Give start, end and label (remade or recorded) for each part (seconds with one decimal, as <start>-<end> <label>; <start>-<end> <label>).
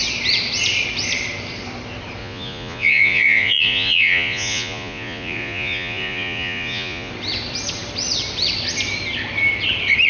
0.0-2.2 recorded; 2.2-7.1 remade; 7.1-10.1 recorded